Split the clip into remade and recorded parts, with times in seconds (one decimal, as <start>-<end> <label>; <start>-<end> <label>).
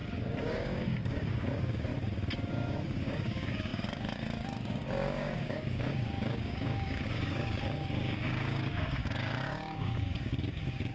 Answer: 0.0-1.9 remade; 1.9-2.5 recorded; 2.5-10.9 remade